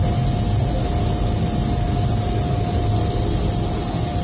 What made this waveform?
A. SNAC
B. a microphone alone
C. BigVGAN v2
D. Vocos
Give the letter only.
B